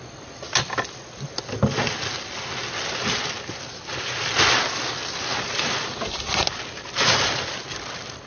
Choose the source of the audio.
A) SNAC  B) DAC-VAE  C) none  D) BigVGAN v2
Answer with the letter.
C